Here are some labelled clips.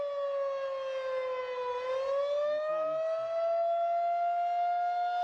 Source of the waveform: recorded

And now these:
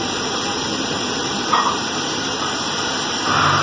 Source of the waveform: remade